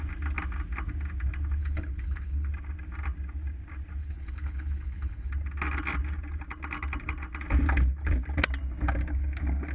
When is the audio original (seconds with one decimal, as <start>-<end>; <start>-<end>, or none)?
0.0-1.6; 2.5-4.0; 5.3-9.7